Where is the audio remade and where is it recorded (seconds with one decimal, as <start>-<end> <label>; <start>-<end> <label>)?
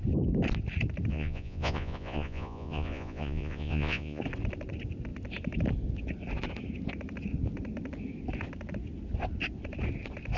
0.0-1.1 recorded; 1.1-4.2 remade; 4.2-10.4 recorded